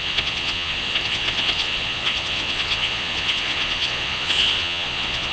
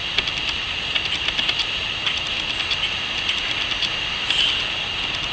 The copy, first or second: first